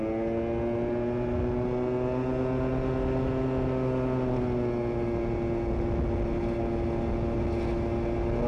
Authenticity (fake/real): real